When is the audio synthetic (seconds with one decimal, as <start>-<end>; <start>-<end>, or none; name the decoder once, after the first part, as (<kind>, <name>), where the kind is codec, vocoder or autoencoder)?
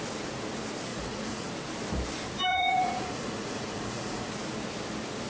0.9-1.5 (vocoder, Vocos); 2.5-4.3